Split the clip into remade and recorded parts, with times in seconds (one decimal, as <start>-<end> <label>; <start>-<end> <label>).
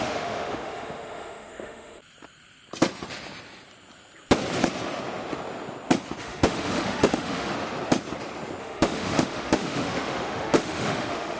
0.0-2.0 remade; 2.0-6.2 recorded; 6.2-7.5 remade; 7.5-8.6 recorded; 8.6-11.4 remade